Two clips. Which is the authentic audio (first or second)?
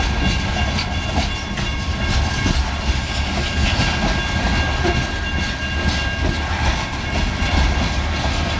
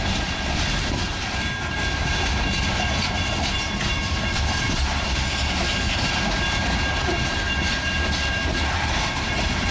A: first